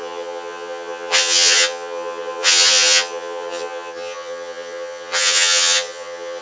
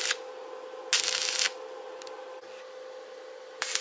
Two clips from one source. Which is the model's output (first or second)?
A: first